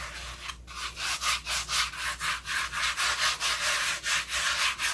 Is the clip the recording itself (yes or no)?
yes